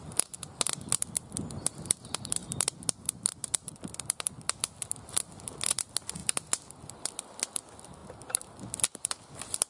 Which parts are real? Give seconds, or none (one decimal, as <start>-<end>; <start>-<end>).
0.0-9.7